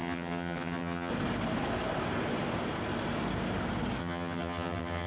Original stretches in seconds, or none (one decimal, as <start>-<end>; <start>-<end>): 1.1-4.0